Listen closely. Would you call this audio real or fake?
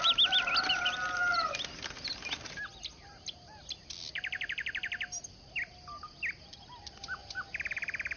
real